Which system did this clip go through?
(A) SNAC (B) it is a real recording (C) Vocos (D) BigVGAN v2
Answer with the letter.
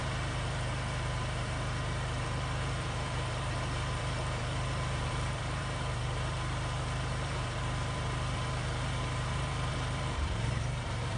D